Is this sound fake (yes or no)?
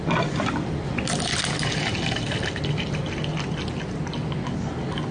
no